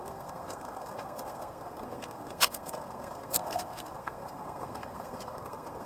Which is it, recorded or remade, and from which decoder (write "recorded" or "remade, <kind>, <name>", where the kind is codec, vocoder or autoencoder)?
remade, codec, SNAC